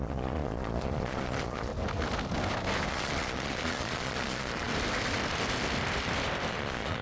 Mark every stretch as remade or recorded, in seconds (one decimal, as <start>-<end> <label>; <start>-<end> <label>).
0.0-1.7 remade; 1.7-2.9 recorded; 2.9-4.7 remade; 4.7-6.5 recorded; 6.5-7.0 remade

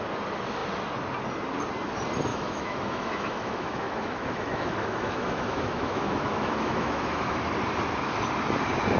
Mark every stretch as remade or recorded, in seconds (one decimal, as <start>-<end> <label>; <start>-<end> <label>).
0.0-2.3 recorded; 2.3-7.4 remade; 7.4-9.0 recorded

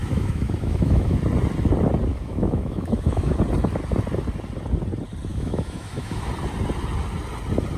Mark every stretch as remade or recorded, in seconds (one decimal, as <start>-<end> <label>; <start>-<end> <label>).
0.0-1.2 remade; 1.2-2.1 recorded; 2.1-3.4 remade; 3.4-5.3 recorded; 5.3-6.3 remade; 6.3-7.8 recorded

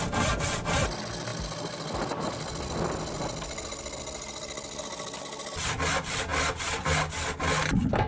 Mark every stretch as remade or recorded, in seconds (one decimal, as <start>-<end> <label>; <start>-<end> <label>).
0.0-8.1 recorded